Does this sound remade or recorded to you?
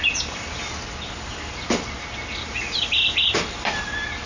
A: recorded